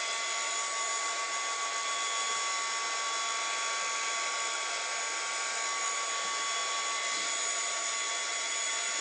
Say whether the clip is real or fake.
real